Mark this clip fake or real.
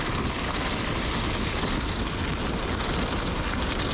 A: real